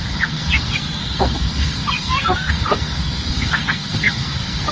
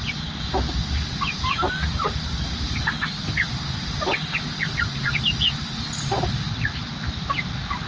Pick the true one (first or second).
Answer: second